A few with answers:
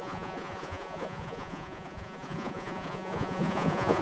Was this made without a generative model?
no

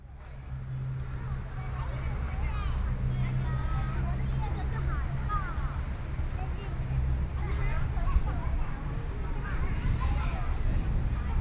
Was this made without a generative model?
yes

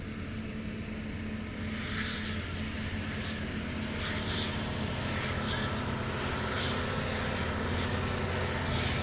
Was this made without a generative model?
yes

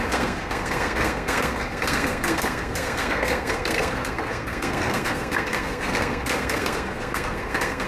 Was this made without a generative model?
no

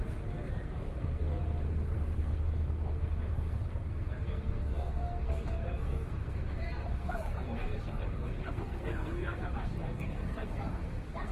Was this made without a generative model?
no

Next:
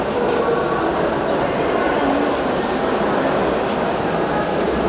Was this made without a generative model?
yes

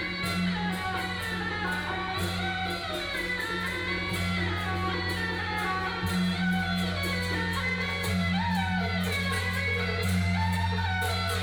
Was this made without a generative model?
yes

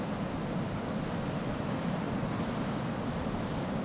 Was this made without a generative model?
yes